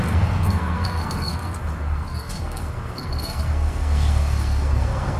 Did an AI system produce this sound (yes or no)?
yes